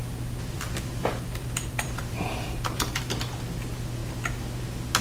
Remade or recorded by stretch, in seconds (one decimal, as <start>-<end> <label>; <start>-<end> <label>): 0.0-3.0 remade; 3.0-5.0 recorded